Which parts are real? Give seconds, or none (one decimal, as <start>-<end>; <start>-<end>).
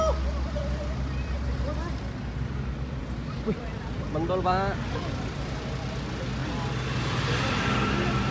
0.0-8.3